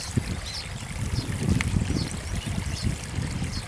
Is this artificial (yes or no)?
no